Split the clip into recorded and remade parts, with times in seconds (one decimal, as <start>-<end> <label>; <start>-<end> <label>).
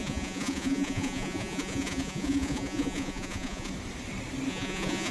0.0-3.7 remade; 3.7-4.5 recorded; 4.5-5.1 remade